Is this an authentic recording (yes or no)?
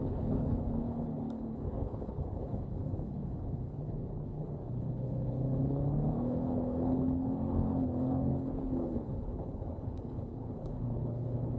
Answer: no